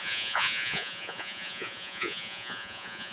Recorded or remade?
remade